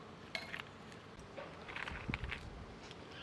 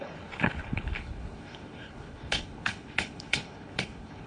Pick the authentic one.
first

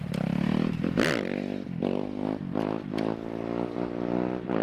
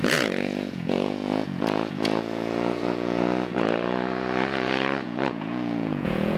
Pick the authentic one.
first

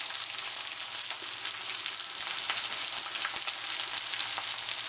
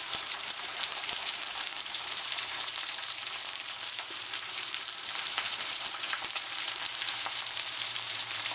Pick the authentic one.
first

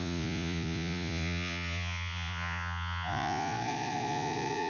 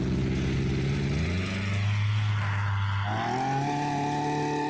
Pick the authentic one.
second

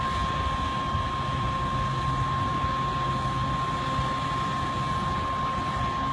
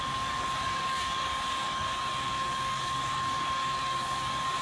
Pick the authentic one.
first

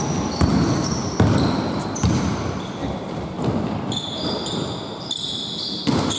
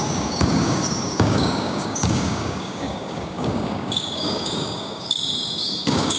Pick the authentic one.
first